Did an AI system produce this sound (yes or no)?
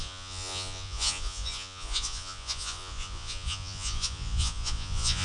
yes